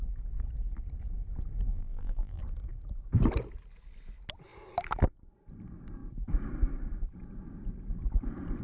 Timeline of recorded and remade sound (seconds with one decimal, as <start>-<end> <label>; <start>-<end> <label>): 0.0-1.7 recorded; 1.7-2.4 remade; 2.4-8.6 recorded